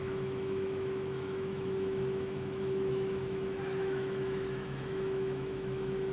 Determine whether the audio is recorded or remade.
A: remade